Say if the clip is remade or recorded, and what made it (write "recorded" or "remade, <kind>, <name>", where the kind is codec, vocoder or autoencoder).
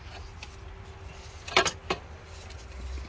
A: recorded